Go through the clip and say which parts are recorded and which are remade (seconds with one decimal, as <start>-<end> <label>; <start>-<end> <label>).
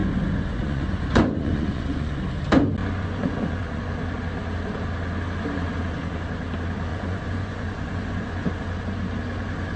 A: 0.0-2.2 remade; 2.2-2.8 recorded; 2.8-3.8 remade; 3.8-6.9 recorded; 6.9-8.5 remade; 8.5-9.8 recorded